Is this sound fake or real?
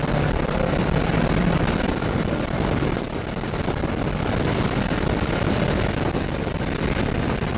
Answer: real